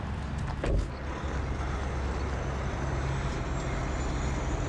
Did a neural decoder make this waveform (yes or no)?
no